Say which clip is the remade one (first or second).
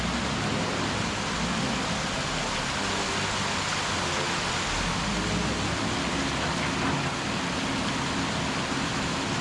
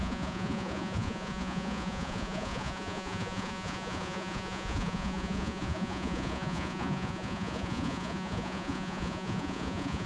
second